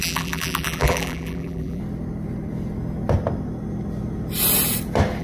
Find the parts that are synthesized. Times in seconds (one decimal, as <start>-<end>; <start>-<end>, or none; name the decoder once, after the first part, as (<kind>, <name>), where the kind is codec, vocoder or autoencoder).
0.0-1.8 (vocoder, BigVGAN v2)